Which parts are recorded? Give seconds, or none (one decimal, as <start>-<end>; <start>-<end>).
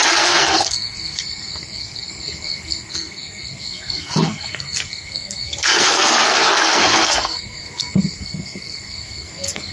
none